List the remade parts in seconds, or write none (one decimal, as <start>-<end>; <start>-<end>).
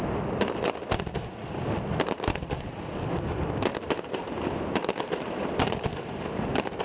none